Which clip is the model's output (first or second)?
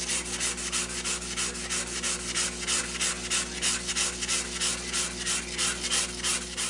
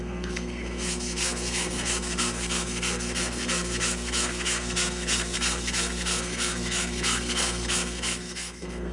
second